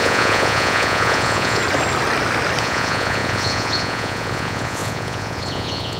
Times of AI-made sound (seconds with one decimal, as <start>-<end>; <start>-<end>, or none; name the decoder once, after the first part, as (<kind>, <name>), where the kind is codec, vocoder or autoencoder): 0.0-1.6 (vocoder, Vocos); 2.6-6.0